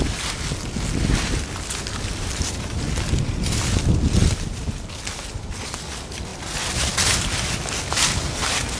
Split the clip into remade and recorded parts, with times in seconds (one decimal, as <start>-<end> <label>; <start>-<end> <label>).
0.0-8.8 recorded